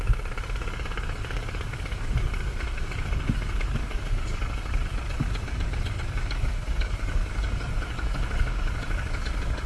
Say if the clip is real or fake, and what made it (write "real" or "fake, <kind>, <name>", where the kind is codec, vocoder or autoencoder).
fake, codec, DAC